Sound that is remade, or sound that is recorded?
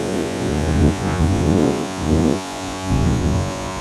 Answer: remade